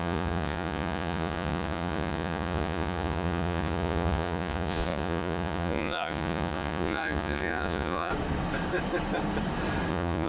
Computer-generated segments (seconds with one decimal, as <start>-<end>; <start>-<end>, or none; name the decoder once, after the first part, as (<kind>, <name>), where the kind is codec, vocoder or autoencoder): 0.0-8.1 (vocoder, Vocos); 9.9-10.3